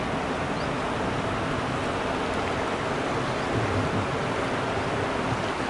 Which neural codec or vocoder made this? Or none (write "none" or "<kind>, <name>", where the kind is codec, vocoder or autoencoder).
none